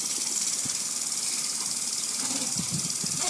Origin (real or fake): real